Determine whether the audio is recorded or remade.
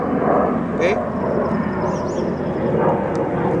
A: recorded